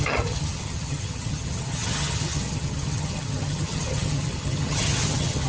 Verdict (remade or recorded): remade